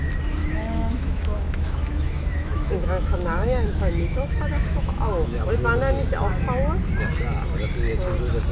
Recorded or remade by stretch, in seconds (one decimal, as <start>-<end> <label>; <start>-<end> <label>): 0.0-0.4 recorded; 0.4-5.5 remade; 5.5-8.5 recorded